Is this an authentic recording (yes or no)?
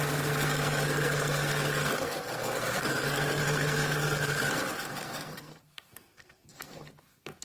no